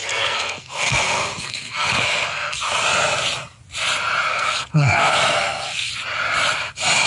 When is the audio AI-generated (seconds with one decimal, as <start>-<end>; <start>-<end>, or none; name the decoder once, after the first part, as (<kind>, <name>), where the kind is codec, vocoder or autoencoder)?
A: 0.0-2.6 (codec, SNAC); 4.3-5.9